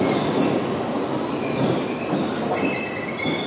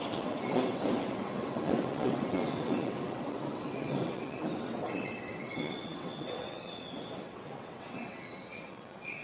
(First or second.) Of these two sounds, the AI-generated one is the second